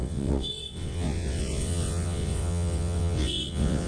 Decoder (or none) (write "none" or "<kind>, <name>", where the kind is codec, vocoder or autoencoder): vocoder, WaveNeXt